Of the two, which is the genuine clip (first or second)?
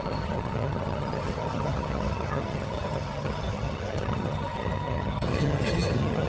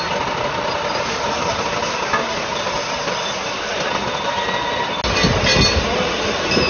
second